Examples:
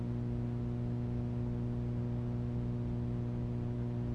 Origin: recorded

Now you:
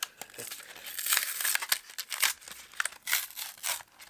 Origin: recorded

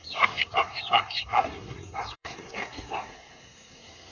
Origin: remade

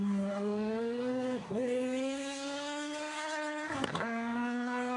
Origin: remade